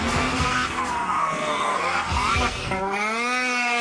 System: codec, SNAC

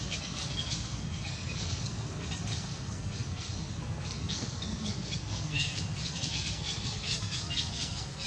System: codec, SNAC